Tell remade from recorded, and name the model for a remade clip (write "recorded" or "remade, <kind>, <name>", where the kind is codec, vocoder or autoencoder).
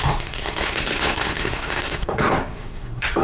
remade, codec, SNAC